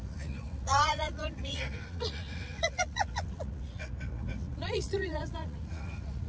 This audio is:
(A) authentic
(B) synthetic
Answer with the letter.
B